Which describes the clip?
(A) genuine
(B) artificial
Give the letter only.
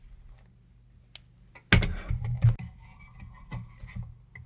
A